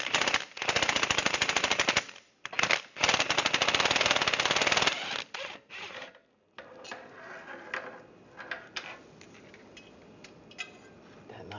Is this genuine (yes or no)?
yes